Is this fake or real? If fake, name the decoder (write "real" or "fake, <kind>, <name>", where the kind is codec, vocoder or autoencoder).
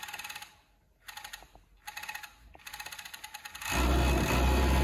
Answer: real